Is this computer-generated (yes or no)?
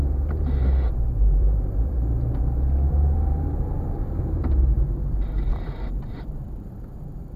yes